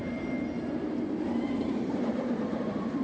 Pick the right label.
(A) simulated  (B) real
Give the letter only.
A